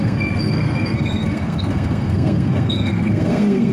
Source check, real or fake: fake